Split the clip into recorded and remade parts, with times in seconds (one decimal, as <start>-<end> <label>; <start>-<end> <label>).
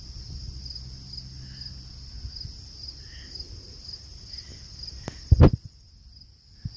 0.0-6.8 recorded